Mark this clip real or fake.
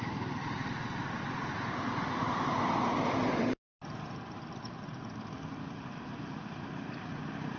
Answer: fake